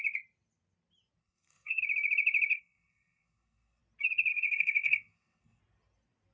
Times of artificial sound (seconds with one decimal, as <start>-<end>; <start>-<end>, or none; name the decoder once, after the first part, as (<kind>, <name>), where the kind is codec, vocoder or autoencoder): 1.2-1.8 (codec, SNAC); 2.5-3.8; 4.3-5.6